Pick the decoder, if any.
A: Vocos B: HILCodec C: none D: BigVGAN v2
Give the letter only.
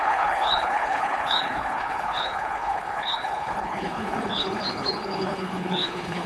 B